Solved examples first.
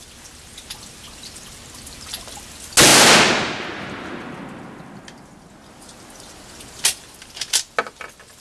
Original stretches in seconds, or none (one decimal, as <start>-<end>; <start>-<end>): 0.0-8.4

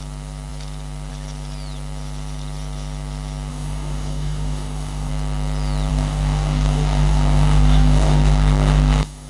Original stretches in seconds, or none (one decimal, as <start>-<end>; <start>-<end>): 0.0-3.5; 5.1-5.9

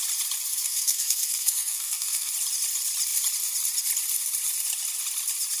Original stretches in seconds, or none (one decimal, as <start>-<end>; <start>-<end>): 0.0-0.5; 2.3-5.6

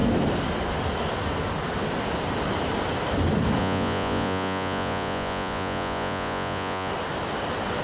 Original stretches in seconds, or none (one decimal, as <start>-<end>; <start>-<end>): 0.0-3.6; 6.9-7.8

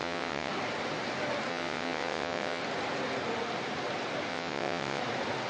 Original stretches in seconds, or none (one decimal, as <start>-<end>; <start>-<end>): 0.5-1.5; 2.6-4.3; 5.0-5.5

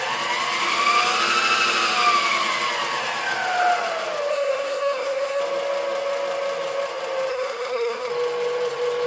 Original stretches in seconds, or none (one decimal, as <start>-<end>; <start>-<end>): 0.0-4.3; 5.4-7.3; 8.1-9.1

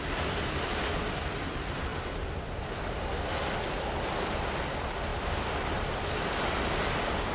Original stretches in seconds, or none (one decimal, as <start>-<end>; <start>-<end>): 0.0-7.3

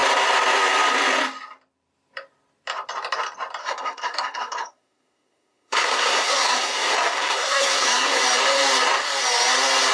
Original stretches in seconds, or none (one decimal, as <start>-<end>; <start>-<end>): 0.0-3.6; 8.2-9.9